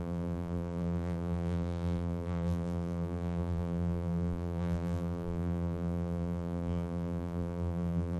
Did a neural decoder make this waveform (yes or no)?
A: yes